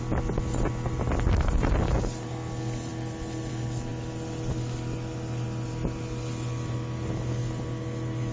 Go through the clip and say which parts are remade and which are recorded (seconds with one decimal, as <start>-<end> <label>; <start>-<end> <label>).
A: 0.0-8.3 recorded